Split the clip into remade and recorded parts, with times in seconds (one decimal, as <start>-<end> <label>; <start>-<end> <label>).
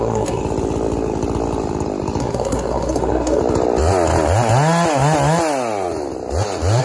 0.0-0.4 remade; 0.4-2.2 recorded; 2.2-3.4 remade; 3.4-6.8 recorded